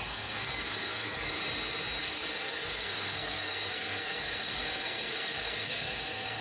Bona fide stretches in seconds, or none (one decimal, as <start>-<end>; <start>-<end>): 1.4-2.0